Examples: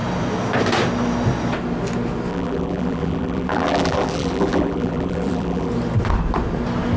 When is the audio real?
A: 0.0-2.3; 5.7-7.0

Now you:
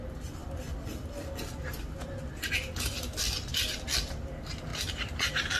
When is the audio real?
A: 0.0-0.4; 2.5-3.5; 4.3-4.7

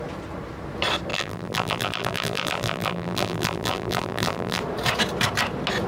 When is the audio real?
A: 0.0-1.1; 4.6-5.9

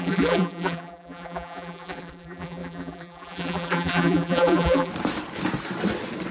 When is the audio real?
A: 4.9-6.3

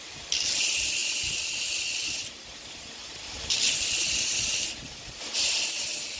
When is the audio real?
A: 0.0-6.2